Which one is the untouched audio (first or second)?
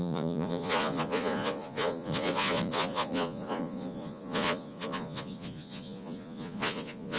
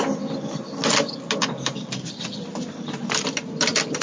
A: second